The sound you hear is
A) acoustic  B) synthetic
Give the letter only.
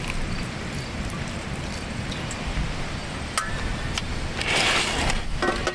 A